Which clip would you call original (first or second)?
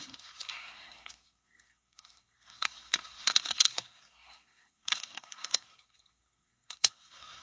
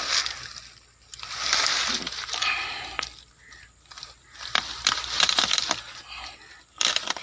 second